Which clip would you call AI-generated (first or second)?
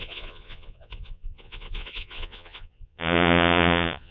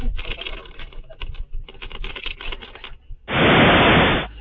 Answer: first